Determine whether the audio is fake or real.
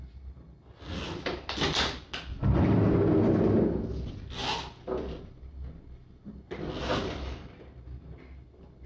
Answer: real